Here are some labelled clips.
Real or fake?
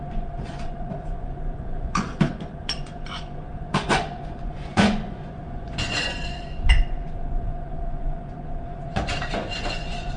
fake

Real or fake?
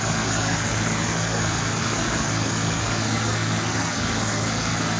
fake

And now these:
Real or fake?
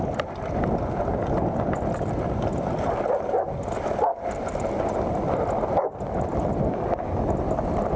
real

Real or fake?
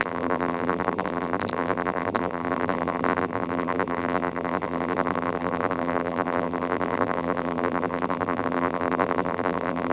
fake